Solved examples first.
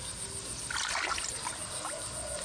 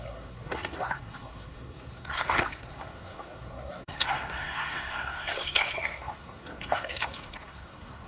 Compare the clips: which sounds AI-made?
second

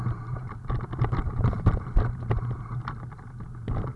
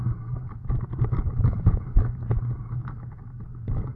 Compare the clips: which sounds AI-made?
second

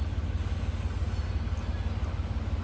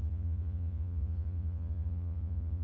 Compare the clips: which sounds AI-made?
second